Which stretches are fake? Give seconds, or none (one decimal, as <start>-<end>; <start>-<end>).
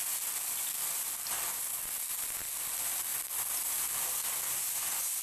3.1-4.3